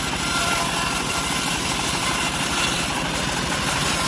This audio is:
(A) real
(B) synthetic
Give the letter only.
B